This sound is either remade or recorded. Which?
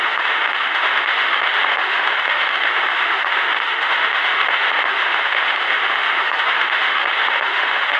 remade